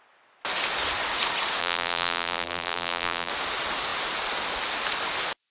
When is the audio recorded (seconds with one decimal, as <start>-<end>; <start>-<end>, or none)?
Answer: 0.0-1.6; 3.3-5.5